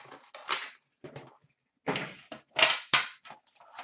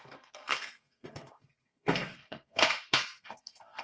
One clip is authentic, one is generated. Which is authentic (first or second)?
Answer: first